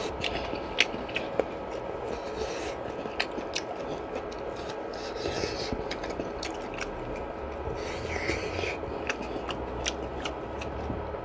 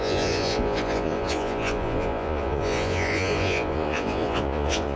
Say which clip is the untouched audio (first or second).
first